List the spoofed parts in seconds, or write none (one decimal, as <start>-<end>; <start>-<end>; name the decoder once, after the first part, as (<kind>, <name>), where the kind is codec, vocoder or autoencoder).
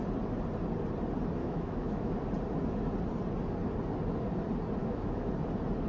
1.4-2.1 (autoencoder, DAC-VAE); 4.8-5.3